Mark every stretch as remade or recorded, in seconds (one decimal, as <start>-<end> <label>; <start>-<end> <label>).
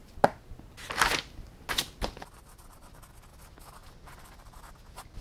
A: 0.0-3.8 recorded; 3.8-4.6 remade; 4.6-5.2 recorded